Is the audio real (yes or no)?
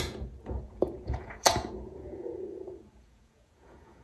no